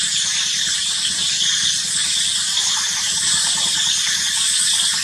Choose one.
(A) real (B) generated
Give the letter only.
A